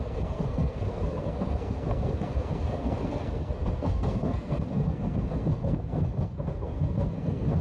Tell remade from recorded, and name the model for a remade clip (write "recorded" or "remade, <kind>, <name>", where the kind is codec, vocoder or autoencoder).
remade, codec, SNAC